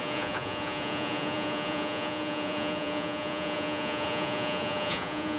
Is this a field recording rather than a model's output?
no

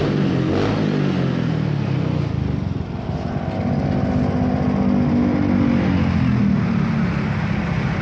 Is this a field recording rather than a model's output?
yes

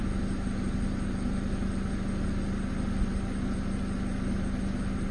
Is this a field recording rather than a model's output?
yes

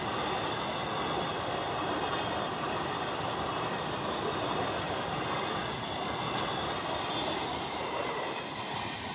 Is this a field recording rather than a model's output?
yes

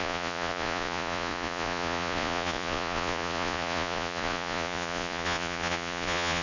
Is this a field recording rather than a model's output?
no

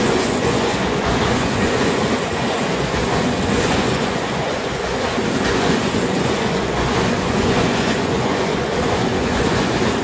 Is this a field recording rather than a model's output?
no